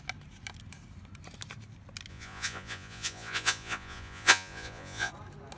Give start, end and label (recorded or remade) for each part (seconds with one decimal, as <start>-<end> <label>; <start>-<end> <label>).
0.0-2.1 recorded; 2.1-5.1 remade; 5.1-5.6 recorded